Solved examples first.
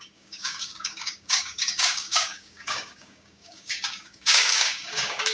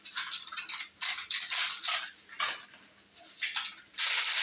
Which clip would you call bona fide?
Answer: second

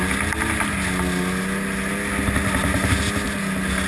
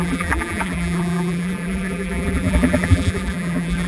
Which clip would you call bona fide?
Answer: first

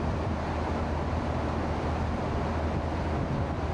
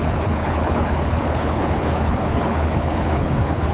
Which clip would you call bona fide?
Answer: first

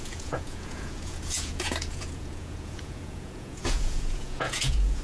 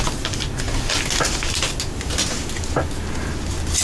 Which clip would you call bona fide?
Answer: second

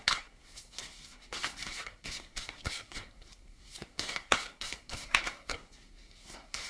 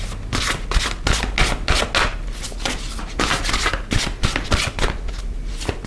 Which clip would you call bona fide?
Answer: second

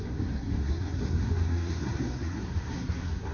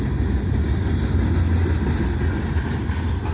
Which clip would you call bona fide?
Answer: second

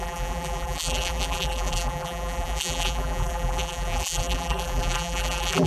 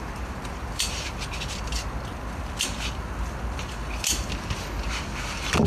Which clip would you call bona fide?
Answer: second